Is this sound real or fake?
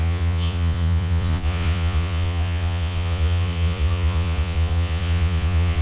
fake